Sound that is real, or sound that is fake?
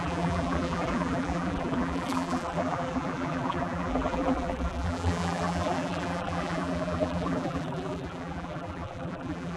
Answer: fake